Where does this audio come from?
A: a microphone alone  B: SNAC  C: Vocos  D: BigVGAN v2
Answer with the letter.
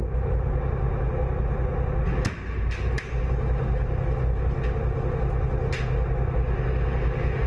A